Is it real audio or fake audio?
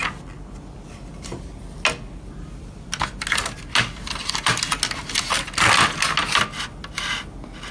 real